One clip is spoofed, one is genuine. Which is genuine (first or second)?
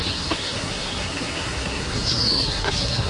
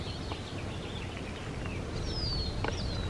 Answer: second